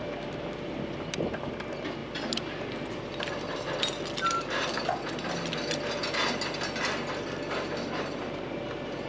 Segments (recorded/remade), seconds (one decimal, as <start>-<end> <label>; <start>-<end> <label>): 0.0-9.1 recorded